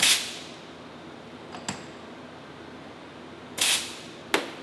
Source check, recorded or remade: recorded